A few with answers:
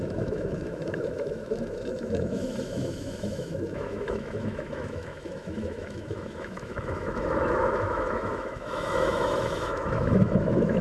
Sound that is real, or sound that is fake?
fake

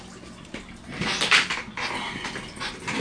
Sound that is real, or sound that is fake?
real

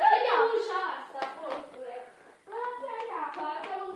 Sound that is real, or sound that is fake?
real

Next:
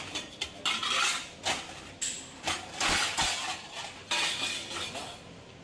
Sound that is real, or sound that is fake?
real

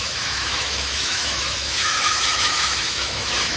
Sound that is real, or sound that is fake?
fake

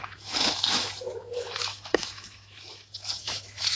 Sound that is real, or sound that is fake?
fake